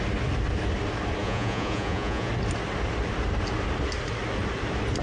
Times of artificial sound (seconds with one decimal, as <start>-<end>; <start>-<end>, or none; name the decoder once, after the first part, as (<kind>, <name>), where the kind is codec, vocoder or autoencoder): 1.2-2.3 (vocoder, Vocos)